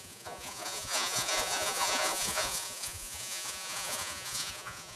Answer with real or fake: fake